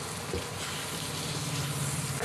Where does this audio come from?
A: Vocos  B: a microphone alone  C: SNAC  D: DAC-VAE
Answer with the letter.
B